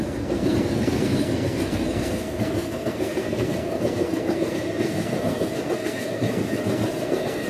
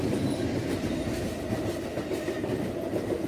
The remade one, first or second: first